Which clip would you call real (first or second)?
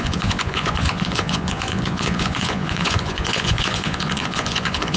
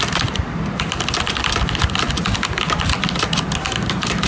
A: second